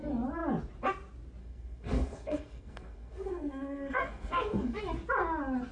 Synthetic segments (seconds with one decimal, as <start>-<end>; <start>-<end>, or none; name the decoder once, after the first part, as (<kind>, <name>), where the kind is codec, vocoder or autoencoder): 1.4-4.8 (codec, SNAC)